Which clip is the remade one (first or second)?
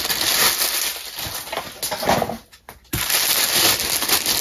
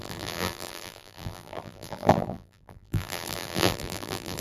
second